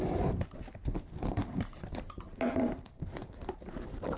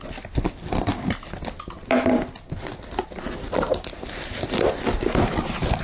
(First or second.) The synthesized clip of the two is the first